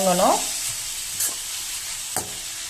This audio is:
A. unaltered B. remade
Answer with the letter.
A